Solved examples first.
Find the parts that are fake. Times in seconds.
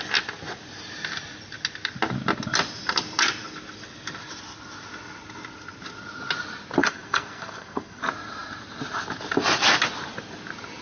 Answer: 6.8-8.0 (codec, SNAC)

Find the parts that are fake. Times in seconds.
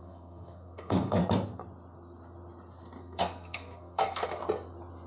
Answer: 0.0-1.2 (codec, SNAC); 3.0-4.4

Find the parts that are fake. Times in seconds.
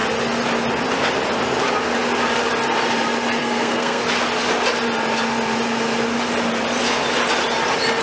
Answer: 3.4-4.0 (codec, SNAC)